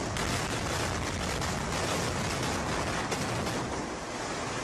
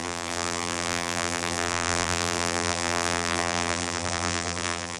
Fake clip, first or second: second